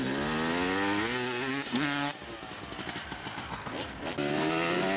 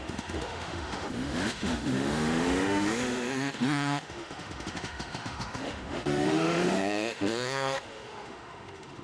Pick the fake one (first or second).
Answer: second